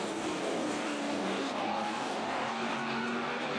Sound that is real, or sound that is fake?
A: fake